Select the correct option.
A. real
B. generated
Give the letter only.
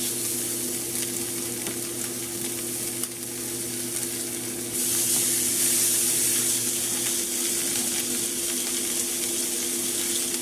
A